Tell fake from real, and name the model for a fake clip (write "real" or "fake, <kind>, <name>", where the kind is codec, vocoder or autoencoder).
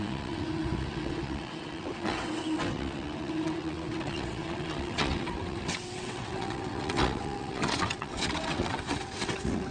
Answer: fake, vocoder, WaveNeXt